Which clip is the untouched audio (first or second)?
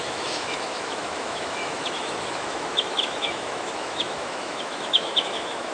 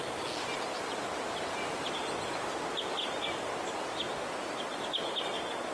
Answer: second